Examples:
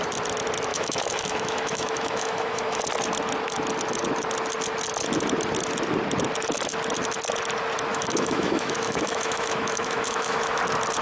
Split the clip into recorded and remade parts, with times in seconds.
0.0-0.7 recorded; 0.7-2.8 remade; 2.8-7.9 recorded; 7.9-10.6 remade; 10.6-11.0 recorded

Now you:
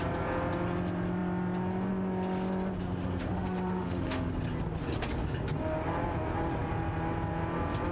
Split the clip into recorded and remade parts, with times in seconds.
0.0-3.2 recorded; 3.2-4.3 remade; 4.3-7.9 recorded

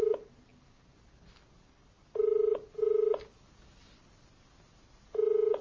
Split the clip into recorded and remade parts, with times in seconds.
0.0-5.6 recorded

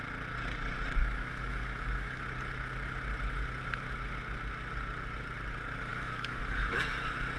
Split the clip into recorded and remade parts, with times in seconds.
0.0-1.0 recorded; 1.0-2.2 remade; 2.2-5.9 recorded; 5.9-6.8 remade; 6.8-7.4 recorded

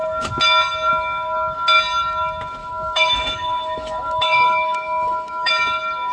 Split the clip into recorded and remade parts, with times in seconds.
0.0-2.6 recorded; 2.6-5.5 remade; 5.5-6.1 recorded

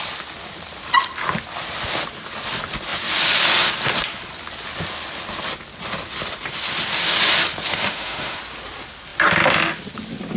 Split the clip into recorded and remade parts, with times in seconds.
0.0-7.7 recorded; 7.7-8.4 remade; 8.4-10.4 recorded

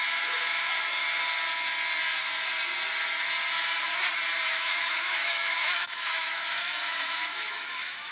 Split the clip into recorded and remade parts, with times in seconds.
0.0-1.0 remade; 1.0-4.5 recorded; 4.5-8.1 remade

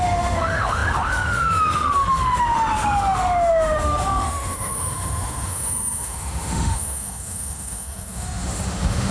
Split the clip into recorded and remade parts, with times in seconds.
0.0-9.1 remade